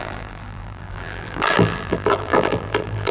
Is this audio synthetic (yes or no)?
yes